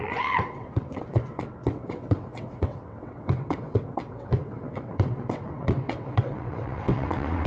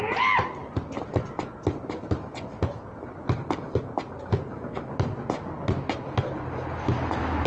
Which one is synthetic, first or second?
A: first